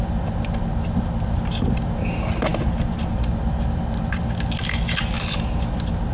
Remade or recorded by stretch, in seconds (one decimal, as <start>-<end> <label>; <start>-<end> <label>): 0.0-6.1 recorded